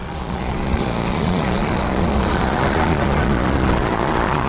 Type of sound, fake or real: fake